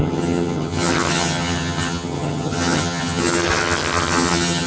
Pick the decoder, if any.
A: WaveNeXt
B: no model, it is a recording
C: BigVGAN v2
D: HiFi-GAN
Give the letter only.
D